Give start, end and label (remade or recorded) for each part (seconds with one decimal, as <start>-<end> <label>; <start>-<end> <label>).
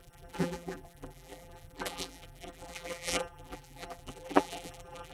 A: 0.0-5.1 remade